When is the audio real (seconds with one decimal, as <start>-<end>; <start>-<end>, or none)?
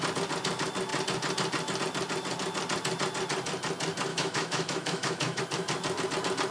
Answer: 0.0-4.1; 5.4-6.5